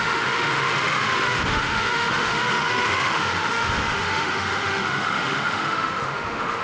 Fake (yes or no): yes